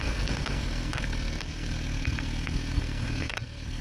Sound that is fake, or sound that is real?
fake